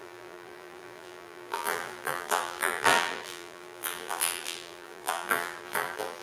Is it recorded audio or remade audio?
remade